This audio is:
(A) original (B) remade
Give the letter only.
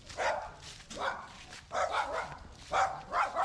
A